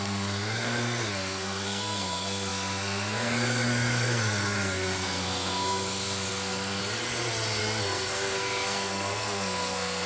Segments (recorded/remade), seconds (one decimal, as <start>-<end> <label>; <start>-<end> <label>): 0.0-6.8 remade; 6.8-7.6 recorded; 7.6-10.1 remade